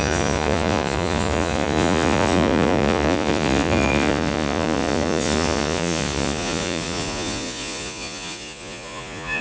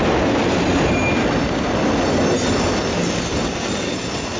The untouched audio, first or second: second